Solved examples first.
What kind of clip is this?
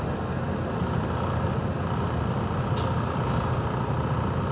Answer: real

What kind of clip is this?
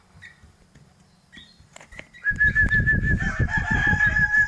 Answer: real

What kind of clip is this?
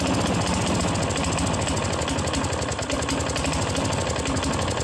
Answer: real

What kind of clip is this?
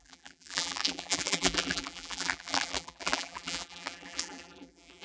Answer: fake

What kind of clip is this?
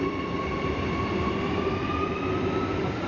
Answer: fake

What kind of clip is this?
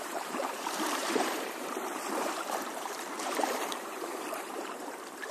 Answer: fake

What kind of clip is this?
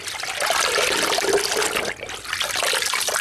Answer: real